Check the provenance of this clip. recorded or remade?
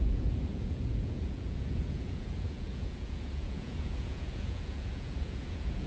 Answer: remade